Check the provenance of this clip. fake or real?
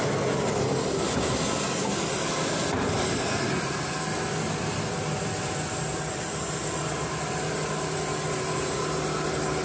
real